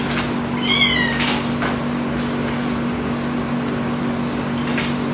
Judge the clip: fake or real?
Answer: real